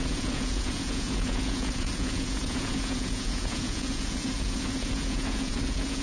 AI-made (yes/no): yes